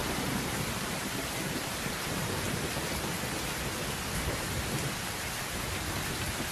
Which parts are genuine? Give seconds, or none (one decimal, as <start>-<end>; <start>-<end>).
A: 2.5-6.5